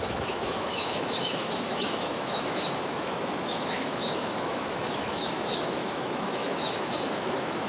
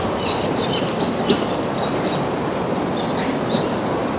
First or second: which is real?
second